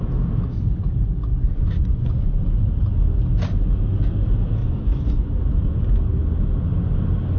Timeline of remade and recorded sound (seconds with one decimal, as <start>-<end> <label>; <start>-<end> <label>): 0.0-1.3 recorded; 1.3-2.4 remade; 2.4-4.6 recorded; 4.6-5.3 remade; 5.3-7.4 recorded